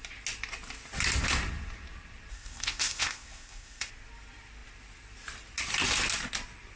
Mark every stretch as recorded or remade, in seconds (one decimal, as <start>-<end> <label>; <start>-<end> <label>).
0.0-2.3 recorded; 2.3-3.9 remade; 3.9-6.8 recorded